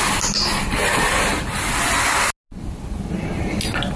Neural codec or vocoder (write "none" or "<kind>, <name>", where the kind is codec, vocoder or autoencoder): none